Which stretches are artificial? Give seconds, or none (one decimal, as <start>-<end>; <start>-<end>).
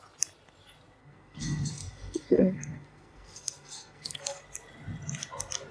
1.0-4.4